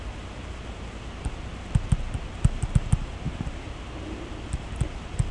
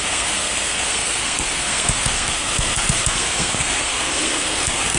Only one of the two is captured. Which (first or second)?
first